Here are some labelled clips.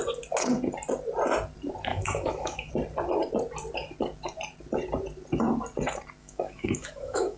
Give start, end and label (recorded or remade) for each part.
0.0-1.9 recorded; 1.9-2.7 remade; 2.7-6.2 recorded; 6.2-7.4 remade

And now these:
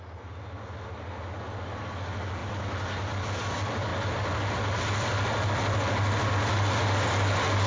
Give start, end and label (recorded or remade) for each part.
0.0-7.7 recorded

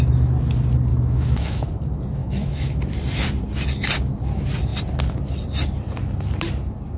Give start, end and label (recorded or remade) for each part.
0.0-0.9 recorded; 0.9-1.7 remade; 1.7-2.2 recorded; 2.2-2.8 remade; 2.8-7.0 recorded

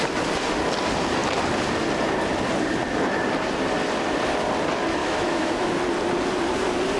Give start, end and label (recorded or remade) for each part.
0.0-5.0 recorded; 5.0-5.7 remade; 5.7-7.0 recorded